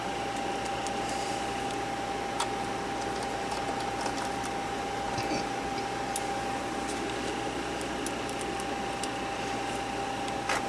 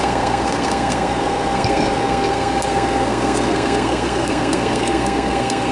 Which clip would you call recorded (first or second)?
first